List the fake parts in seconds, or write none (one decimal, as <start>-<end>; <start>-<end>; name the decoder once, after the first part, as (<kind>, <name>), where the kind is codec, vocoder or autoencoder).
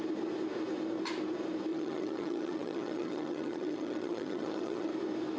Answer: 1.7-4.9 (vocoder, HiFi-GAN)